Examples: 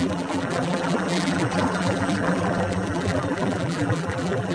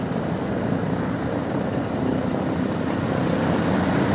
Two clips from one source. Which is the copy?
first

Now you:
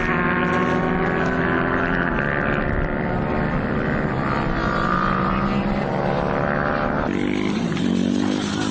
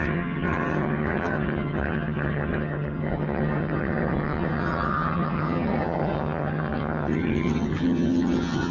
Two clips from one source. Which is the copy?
second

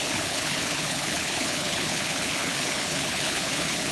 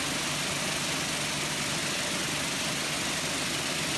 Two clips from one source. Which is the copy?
first